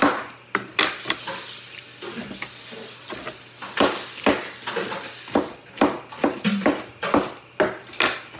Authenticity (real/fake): real